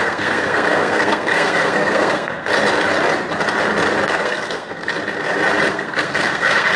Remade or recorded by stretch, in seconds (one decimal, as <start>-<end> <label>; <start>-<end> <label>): 0.0-2.5 remade; 2.5-4.1 recorded; 4.1-4.9 remade; 4.9-5.7 recorded; 5.7-6.8 remade